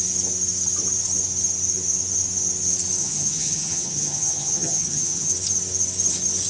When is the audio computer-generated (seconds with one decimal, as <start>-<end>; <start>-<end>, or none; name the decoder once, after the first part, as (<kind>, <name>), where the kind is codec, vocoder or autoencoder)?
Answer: 3.0-5.3 (vocoder, HiFi-GAN)